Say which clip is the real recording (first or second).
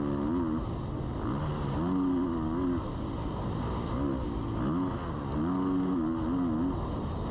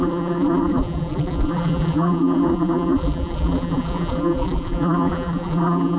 first